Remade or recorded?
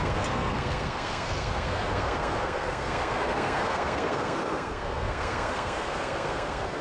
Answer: remade